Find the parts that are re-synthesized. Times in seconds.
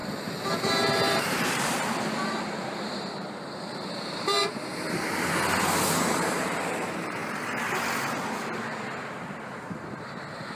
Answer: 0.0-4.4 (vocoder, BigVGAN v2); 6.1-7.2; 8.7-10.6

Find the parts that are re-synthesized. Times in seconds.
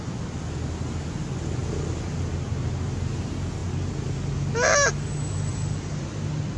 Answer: 1.6-2.3 (vocoder, BigVGAN v2); 5.5-6.1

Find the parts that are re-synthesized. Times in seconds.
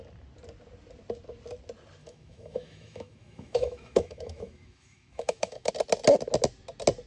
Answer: 2.0-5.7 (autoencoder, DAC-VAE)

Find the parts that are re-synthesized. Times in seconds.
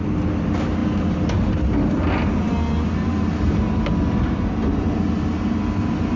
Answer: none